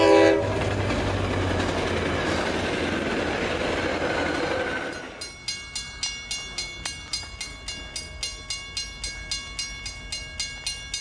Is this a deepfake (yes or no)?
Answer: no